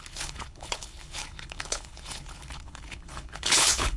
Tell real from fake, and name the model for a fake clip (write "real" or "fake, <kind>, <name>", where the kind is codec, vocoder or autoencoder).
fake, codec, HILCodec